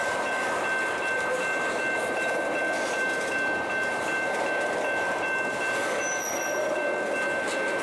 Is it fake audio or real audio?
real